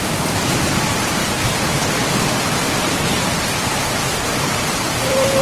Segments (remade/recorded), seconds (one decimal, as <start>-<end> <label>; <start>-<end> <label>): 0.0-1.2 remade; 1.2-2.8 recorded; 2.8-4.1 remade; 4.1-4.9 recorded; 4.9-5.4 remade